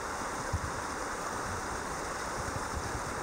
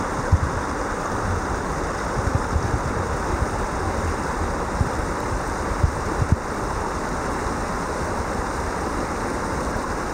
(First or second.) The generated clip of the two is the first